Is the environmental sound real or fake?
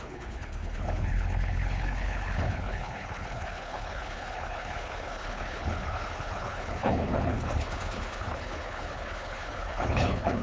fake